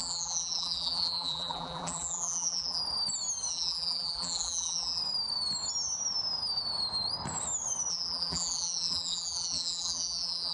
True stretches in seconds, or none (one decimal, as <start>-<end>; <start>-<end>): 2.8-3.5; 5.0-7.9